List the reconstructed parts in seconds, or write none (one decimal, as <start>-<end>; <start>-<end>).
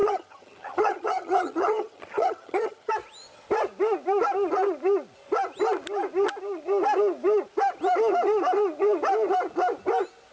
0.0-2.9